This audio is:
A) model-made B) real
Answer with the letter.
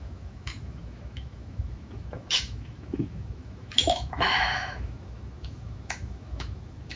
A